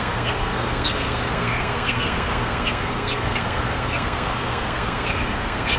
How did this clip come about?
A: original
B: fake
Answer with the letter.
B